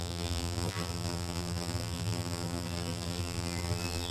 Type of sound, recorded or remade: remade